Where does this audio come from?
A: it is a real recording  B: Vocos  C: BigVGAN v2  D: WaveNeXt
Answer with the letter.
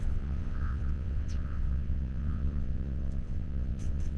D